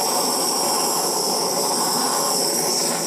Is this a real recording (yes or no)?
yes